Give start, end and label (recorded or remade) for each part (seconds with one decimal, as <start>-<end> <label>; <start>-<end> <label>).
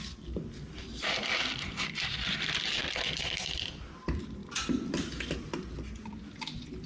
0.0-2.8 recorded; 2.8-3.8 remade; 3.8-4.4 recorded; 4.4-5.5 remade; 5.5-6.9 recorded